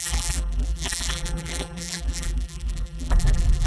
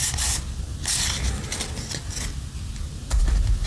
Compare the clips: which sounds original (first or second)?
second